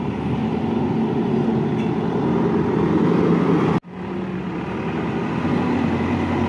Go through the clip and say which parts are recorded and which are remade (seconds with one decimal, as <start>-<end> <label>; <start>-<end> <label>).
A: 0.0-6.5 recorded